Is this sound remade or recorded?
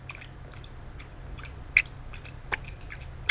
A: recorded